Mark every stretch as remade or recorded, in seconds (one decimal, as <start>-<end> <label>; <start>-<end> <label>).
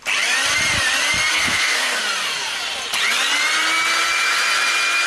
0.0-1.3 recorded; 1.3-2.0 remade; 2.0-5.1 recorded